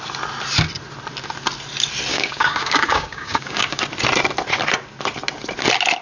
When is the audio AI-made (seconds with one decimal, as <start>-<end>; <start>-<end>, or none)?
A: 2.1-3.8